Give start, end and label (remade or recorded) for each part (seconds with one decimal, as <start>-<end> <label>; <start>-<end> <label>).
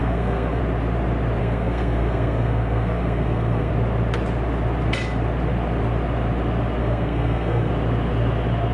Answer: 0.0-0.6 remade; 0.6-1.4 recorded; 1.4-3.7 remade; 3.7-6.8 recorded; 6.8-7.7 remade; 7.7-8.7 recorded